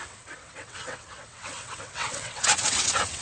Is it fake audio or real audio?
fake